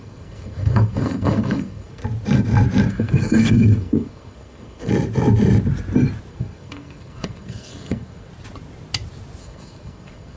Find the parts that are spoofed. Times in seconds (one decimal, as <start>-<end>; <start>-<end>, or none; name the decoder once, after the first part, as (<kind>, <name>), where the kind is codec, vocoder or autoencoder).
0.0-2.0 (codec, SNAC); 2.9-4.9; 6.3-8.3; 9.4-10.4

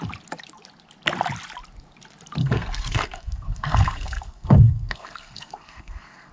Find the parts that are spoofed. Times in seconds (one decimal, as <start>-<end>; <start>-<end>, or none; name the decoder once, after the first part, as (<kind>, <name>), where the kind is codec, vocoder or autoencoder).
2.4-6.3 (codec, SNAC)

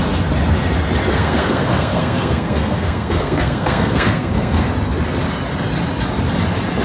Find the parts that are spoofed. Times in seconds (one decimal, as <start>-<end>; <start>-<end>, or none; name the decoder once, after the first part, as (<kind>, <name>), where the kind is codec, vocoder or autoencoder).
1.1-4.7 (codec, SNAC)